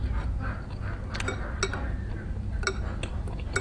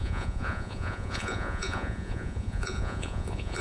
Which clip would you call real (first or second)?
first